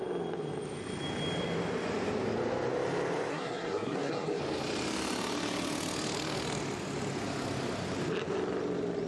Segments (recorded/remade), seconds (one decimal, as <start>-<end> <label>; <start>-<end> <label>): 0.0-3.3 recorded; 3.3-4.4 remade; 4.4-9.1 recorded